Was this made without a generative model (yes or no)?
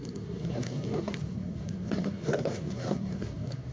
no